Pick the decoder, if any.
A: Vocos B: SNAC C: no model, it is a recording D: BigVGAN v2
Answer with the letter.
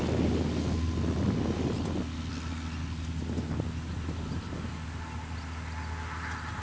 C